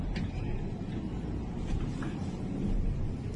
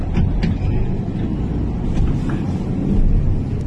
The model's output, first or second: first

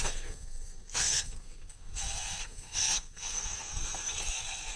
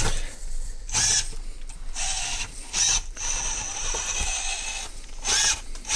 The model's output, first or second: first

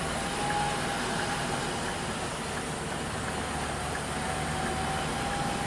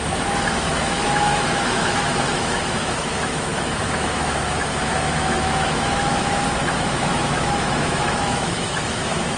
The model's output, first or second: second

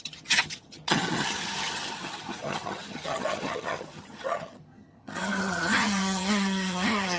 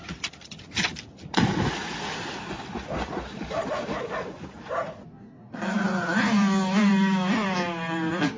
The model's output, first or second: first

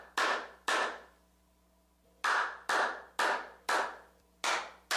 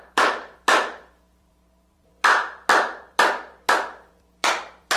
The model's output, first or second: second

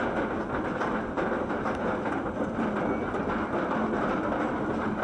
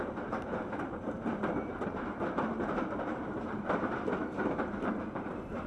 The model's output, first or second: second